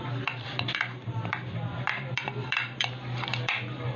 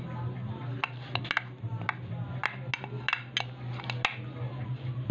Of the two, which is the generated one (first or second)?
first